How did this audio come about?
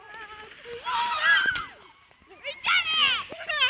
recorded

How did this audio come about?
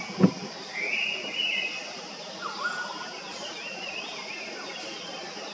recorded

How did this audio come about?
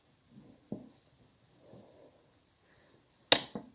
recorded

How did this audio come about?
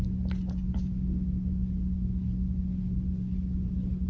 recorded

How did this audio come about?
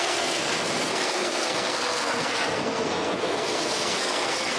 remade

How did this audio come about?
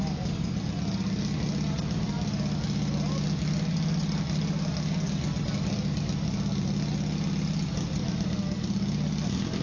recorded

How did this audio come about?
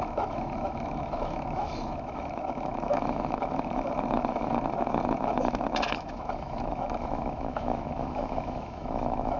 remade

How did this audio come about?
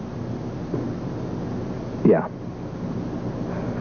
recorded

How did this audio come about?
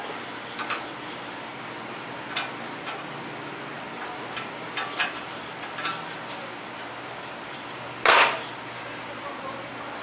recorded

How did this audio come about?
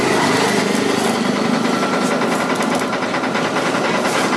recorded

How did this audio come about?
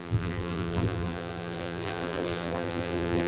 remade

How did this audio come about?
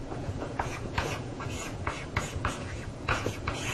remade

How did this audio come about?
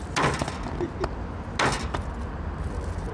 recorded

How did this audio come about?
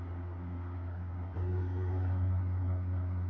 remade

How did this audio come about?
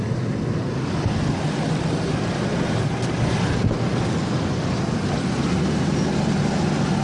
recorded